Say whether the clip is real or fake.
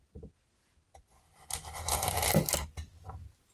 real